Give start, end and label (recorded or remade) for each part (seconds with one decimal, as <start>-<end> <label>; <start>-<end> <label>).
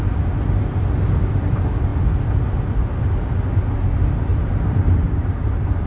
0.0-4.3 recorded; 4.3-5.9 remade